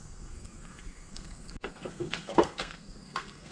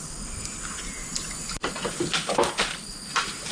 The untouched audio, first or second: second